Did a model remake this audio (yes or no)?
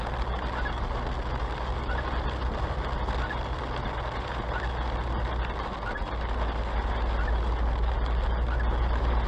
no